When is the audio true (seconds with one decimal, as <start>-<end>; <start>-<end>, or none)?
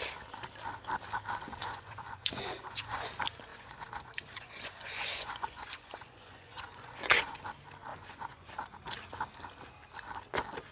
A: 0.0-1.6; 3.1-3.5; 7.4-7.9; 8.5-10.7